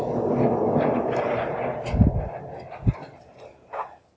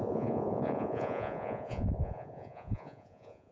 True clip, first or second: first